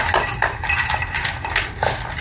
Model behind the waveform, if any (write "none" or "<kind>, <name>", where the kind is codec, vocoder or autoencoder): none